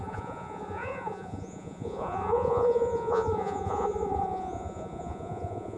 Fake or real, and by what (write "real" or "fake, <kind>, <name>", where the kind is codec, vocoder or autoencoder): fake, vocoder, Vocos